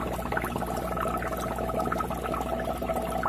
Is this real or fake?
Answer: real